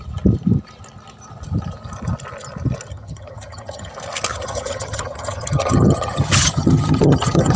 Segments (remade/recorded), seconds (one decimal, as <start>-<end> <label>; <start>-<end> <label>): 0.0-2.9 recorded; 2.9-3.9 remade; 3.9-4.3 recorded; 4.3-7.6 remade